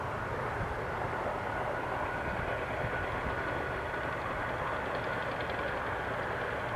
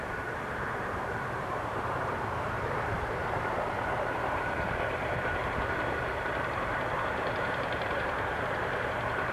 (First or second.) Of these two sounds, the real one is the first